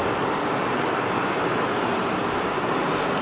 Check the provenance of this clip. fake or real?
real